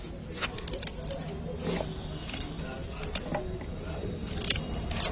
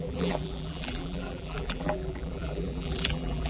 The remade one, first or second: second